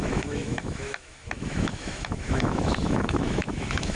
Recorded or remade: remade